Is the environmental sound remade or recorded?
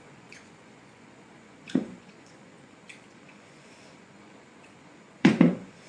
remade